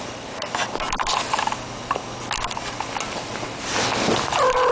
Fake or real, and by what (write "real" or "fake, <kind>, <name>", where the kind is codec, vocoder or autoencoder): real